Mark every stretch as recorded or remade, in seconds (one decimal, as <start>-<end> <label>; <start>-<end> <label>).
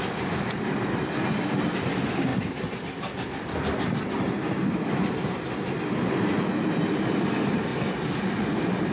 0.0-8.9 recorded